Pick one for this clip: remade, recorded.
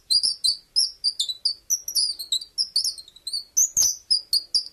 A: recorded